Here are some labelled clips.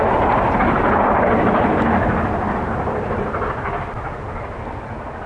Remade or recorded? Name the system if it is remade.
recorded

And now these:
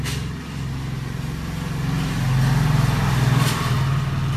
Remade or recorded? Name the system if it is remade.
recorded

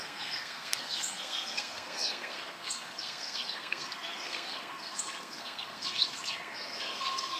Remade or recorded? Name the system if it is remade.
remade, codec, SNAC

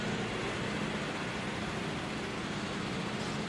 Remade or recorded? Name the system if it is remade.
recorded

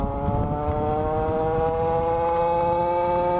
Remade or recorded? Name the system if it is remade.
recorded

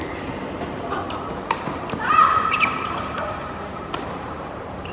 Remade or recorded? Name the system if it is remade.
remade, vocoder, BigVGAN v2